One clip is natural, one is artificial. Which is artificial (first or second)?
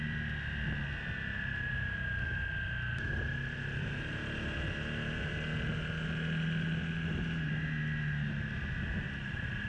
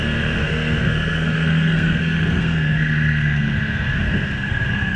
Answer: second